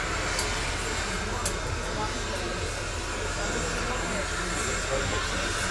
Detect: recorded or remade recorded